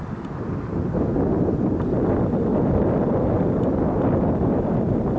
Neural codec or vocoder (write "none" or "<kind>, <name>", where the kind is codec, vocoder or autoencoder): none